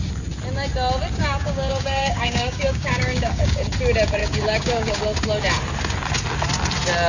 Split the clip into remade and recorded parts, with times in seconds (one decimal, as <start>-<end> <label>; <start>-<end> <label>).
0.0-1.2 recorded; 1.2-3.6 remade; 3.6-4.2 recorded; 4.2-5.0 remade; 5.0-7.1 recorded